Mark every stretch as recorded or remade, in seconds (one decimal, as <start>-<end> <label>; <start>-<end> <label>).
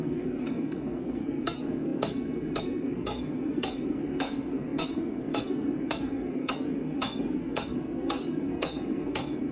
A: 0.0-9.5 remade